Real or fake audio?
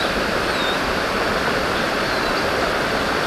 real